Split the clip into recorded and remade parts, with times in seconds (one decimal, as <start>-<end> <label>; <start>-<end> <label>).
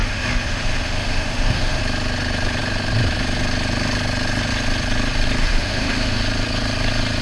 0.0-1.8 remade; 1.8-5.4 recorded; 5.4-6.2 remade; 6.2-7.2 recorded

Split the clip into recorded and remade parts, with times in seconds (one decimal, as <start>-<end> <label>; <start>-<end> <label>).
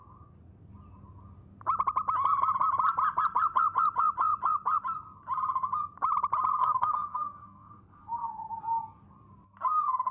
0.0-6.6 recorded; 6.6-8.3 remade; 8.3-10.1 recorded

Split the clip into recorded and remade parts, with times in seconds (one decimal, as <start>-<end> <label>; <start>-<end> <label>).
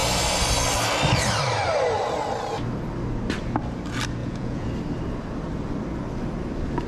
0.0-4.2 recorded; 4.2-4.7 remade; 4.7-6.9 recorded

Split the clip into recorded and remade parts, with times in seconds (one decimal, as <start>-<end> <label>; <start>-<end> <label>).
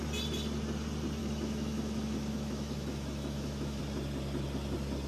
0.0-1.2 recorded; 1.2-3.8 remade; 3.8-5.1 recorded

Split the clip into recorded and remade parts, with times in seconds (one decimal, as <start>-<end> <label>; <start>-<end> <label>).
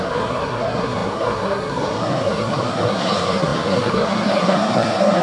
0.0-5.2 remade